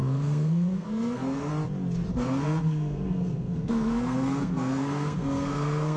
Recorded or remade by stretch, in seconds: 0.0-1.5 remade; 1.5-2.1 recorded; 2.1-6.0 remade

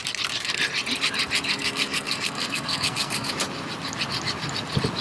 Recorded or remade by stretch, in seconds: 0.0-1.5 recorded; 1.5-3.3 remade; 3.3-5.0 recorded

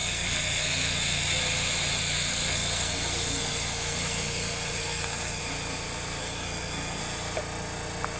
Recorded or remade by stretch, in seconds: 0.0-1.4 remade; 1.4-2.0 recorded; 2.0-5.4 remade; 5.4-6.2 recorded; 6.2-7.0 remade; 7.0-8.2 recorded

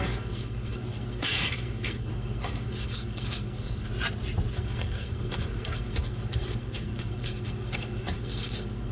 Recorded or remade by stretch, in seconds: 0.0-3.9 remade; 3.9-4.5 recorded; 4.5-8.9 remade

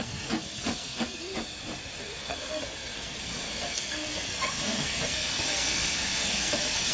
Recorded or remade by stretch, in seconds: 0.0-1.3 remade; 1.3-2.0 recorded; 2.0-6.9 remade

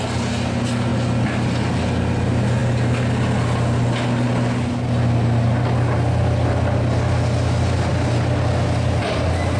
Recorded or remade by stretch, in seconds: 0.0-9.6 recorded